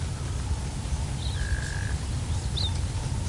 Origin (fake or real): real